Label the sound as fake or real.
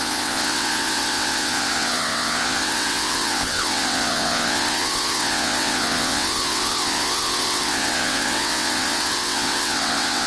fake